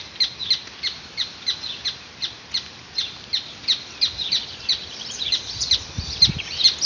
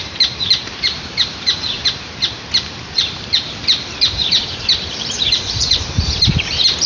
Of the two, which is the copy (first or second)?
second